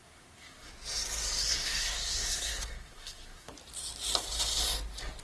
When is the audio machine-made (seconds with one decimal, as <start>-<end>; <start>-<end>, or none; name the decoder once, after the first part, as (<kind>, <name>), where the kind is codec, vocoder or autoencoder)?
0.0-0.7 (codec, SNAC); 1.4-3.5